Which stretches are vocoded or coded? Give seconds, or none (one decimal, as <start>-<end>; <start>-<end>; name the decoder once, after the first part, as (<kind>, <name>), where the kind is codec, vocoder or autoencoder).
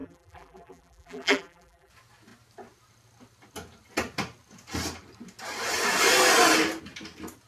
0.0-1.9 (vocoder, BigVGAN v2)